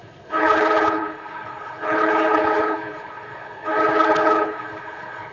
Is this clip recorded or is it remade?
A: remade